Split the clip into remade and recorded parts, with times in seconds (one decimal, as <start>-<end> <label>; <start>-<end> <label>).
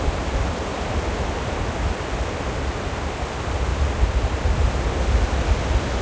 0.0-6.0 recorded